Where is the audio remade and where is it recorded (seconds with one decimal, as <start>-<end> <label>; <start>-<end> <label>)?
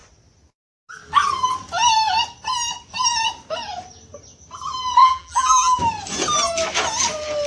0.0-5.0 recorded; 5.0-5.8 remade; 5.8-7.5 recorded